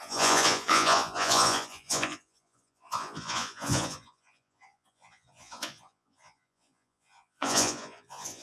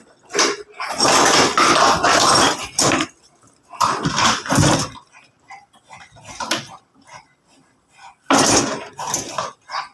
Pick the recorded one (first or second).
second